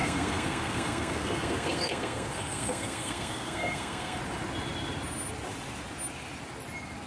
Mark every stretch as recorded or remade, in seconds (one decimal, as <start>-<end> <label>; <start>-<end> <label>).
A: 0.0-4.2 remade; 4.2-7.1 recorded